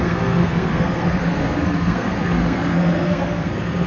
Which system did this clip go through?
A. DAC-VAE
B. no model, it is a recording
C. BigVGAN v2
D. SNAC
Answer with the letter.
D